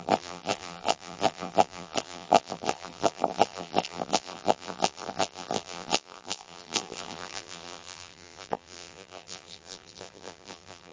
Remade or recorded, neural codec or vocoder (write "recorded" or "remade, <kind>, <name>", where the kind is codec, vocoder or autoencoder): remade, vocoder, BigVGAN v2